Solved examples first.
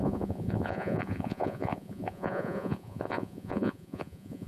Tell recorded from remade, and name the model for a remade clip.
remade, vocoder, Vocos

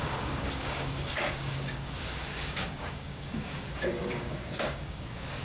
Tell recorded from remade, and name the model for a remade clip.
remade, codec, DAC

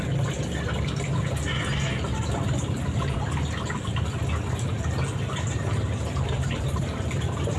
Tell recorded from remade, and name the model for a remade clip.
recorded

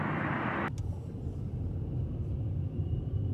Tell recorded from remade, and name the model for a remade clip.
recorded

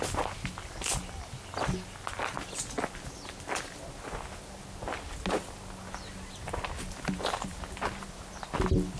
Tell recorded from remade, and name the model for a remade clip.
recorded